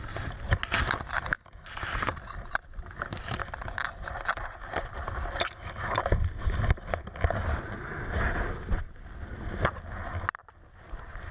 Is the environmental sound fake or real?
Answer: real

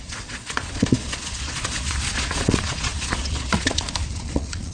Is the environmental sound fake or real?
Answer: fake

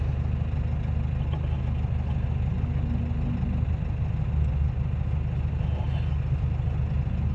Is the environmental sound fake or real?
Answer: real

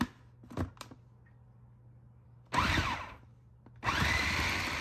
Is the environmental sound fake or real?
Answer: real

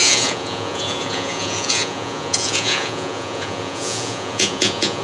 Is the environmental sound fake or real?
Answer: fake